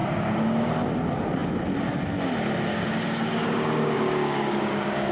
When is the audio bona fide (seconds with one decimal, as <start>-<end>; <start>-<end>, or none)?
0.7-2.7

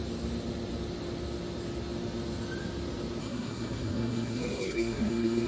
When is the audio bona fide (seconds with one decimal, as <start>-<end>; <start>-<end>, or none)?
0.0-3.2